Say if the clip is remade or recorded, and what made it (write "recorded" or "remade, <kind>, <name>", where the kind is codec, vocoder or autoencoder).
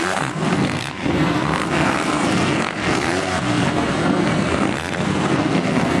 remade, codec, SNAC